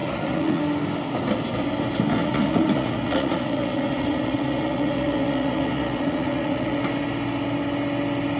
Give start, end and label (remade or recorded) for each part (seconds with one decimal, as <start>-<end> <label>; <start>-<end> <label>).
0.0-0.6 remade; 0.6-2.2 recorded; 2.2-6.8 remade; 6.8-8.4 recorded